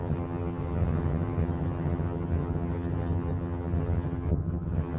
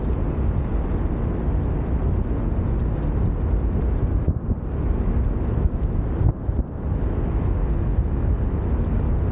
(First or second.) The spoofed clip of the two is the first